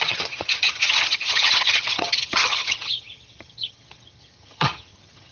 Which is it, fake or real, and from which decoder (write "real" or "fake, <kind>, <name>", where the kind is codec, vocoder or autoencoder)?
fake, vocoder, HiFi-GAN